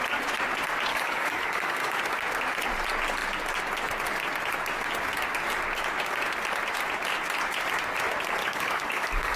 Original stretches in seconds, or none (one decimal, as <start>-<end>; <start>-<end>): 0.0-0.9; 2.0-8.4